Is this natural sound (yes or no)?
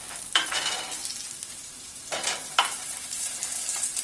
no